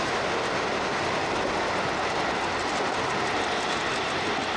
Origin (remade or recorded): recorded